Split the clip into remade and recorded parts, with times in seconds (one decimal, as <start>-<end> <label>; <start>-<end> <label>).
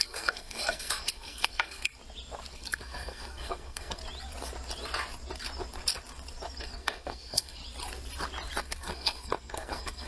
0.0-1.9 remade; 1.9-2.5 recorded; 2.5-4.0 remade; 4.0-6.6 recorded; 6.6-7.6 remade; 7.6-8.6 recorded; 8.6-10.1 remade